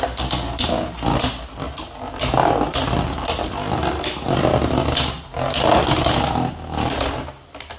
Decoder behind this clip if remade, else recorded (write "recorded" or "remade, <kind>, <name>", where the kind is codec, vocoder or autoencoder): recorded